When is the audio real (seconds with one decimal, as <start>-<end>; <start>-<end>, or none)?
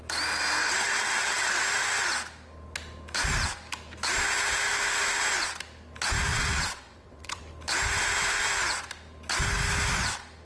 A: 0.0-0.6; 1.6-6.3; 7.4-10.4